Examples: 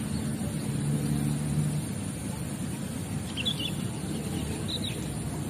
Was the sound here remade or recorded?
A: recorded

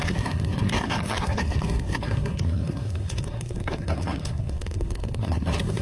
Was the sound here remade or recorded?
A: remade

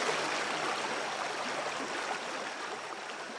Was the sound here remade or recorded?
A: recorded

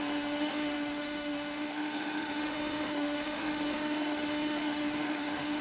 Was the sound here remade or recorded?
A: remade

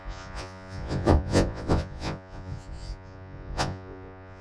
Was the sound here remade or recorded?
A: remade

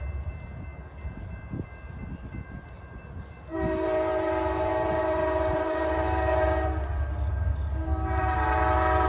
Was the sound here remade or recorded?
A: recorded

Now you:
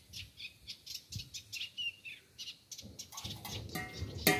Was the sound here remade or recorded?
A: recorded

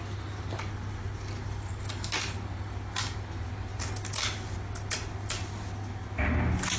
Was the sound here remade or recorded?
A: recorded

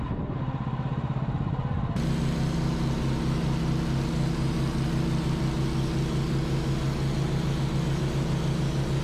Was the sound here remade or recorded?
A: recorded